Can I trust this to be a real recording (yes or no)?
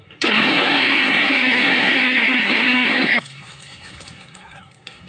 no